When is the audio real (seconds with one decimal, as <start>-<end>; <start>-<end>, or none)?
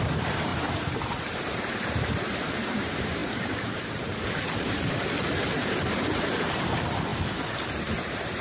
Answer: none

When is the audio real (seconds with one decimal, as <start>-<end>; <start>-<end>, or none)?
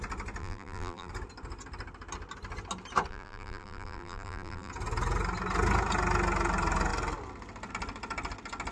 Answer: 0.0-0.4; 1.1-3.1; 4.7-8.7